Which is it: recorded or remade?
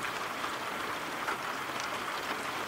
remade